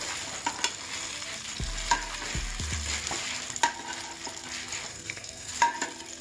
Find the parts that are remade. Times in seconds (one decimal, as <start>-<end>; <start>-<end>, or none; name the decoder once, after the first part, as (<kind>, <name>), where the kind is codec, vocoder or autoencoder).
4.9-5.5 (codec, SNAC)